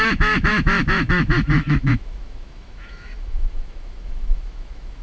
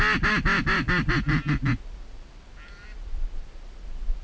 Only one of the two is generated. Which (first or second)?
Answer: first